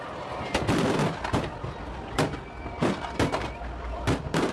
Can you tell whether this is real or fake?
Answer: real